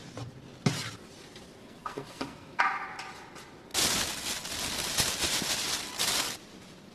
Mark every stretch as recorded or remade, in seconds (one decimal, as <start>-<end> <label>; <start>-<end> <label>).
0.0-1.6 recorded; 1.6-2.6 remade; 2.6-6.9 recorded